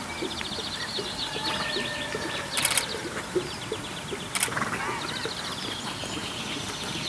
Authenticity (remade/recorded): recorded